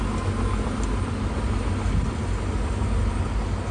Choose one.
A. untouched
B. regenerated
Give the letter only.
A